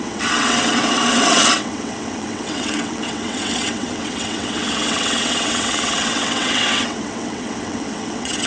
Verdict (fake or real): fake